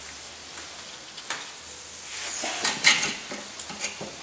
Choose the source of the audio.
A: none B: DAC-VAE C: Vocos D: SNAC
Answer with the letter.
A